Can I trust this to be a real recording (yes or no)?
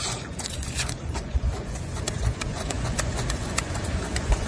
no